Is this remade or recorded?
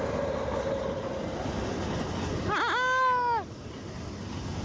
recorded